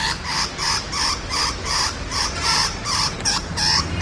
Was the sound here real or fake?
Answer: fake